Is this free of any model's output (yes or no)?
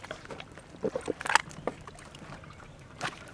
yes